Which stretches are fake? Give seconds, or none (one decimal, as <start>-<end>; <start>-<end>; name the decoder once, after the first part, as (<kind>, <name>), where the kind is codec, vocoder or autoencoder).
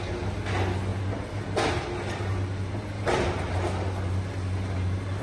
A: none